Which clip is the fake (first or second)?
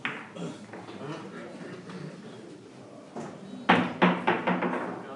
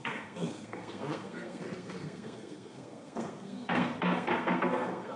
second